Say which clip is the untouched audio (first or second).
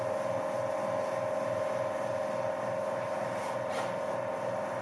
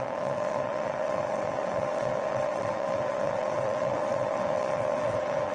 first